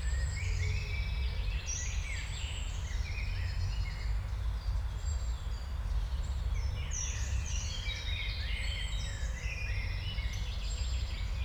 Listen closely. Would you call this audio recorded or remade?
recorded